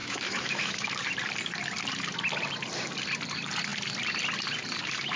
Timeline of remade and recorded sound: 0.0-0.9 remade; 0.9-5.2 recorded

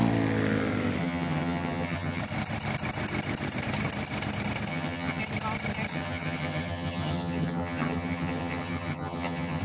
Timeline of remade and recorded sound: 0.0-1.0 recorded; 1.0-2.2 remade; 2.2-4.7 recorded; 4.7-5.2 remade; 5.2-5.9 recorded; 5.9-9.6 remade

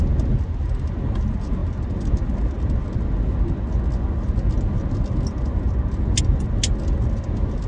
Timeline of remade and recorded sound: 0.0-7.7 recorded

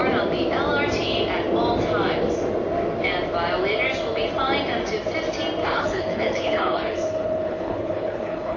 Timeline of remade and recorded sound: 0.0-5.6 recorded; 5.6-8.6 remade

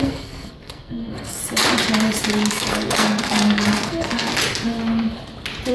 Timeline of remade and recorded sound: 0.0-1.4 remade; 1.4-2.5 recorded; 2.5-4.3 remade; 4.3-5.7 recorded

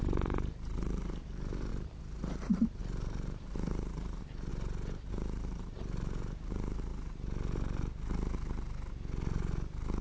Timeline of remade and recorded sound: 0.0-1.7 remade; 1.7-2.8 recorded; 2.8-4.5 remade; 4.5-5.1 recorded; 5.1-6.9 remade; 6.9-10.0 recorded

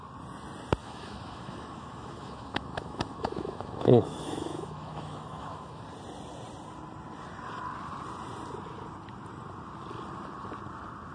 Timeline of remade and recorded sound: 0.0-0.8 recorded; 0.8-5.8 remade; 5.8-11.1 recorded